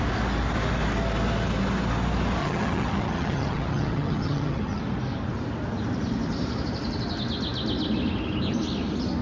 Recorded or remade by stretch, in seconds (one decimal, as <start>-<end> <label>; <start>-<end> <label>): 0.0-2.4 recorded; 2.4-4.8 remade; 4.8-9.2 recorded